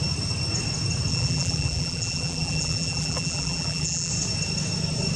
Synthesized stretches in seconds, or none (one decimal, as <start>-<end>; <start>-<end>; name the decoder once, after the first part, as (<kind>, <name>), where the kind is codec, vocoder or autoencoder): 1.1-4.1 (vocoder, BigVGAN v2)